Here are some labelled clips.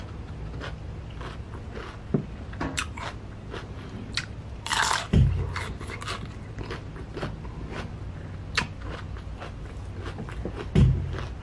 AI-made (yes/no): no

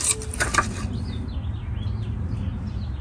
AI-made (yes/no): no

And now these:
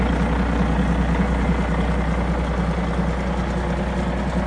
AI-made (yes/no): no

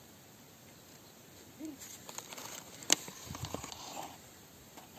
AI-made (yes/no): no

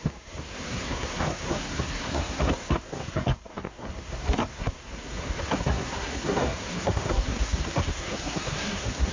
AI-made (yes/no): yes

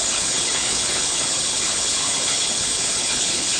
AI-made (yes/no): yes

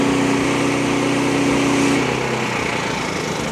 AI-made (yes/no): no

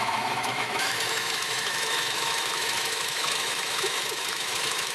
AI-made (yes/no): yes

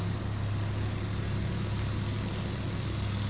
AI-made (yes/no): no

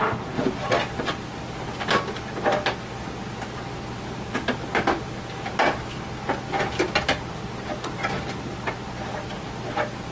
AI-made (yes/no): no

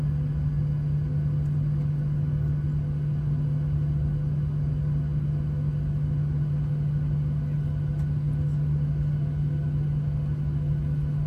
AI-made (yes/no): no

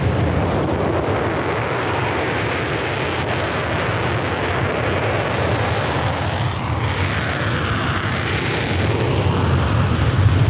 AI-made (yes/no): no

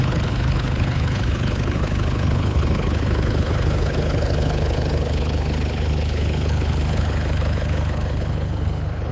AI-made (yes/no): yes